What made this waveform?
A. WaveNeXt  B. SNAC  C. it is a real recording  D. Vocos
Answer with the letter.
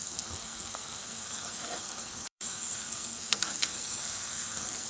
B